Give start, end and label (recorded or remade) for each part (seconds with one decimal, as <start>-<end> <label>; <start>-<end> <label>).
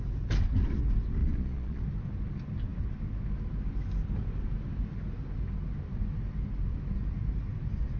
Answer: 0.0-1.2 recorded; 1.2-1.8 remade; 1.8-8.0 recorded